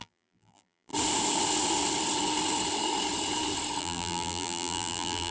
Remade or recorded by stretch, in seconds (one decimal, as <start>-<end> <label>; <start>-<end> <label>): 0.0-0.9 remade; 0.9-3.8 recorded; 3.8-5.3 remade